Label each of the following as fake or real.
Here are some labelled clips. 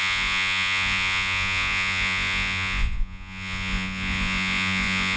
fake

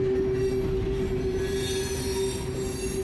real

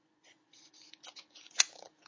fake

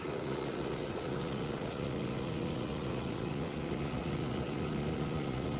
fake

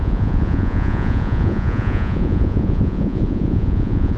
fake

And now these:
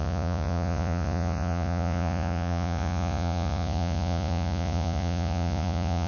fake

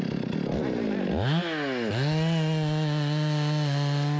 real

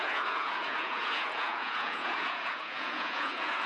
fake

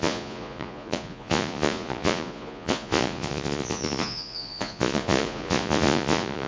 fake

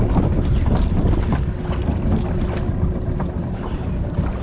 real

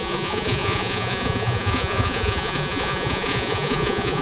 fake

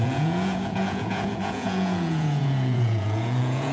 fake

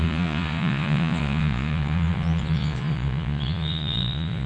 fake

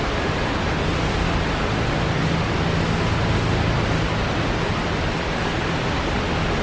real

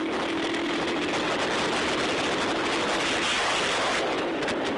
real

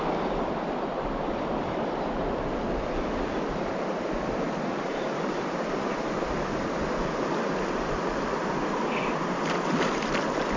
real